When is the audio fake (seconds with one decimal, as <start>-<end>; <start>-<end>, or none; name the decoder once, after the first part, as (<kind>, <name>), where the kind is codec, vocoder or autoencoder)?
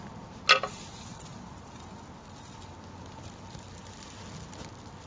none